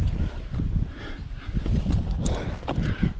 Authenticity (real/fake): real